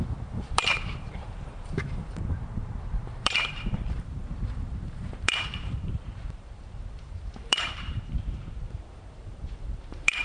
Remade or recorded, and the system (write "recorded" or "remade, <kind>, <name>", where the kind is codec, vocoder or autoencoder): remade, vocoder, BigVGAN v2